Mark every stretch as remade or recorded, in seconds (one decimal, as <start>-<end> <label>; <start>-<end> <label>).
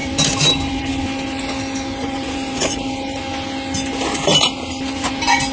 0.0-0.9 remade; 0.9-2.0 recorded; 2.0-3.2 remade; 3.2-4.3 recorded; 4.3-5.1 remade; 5.1-5.5 recorded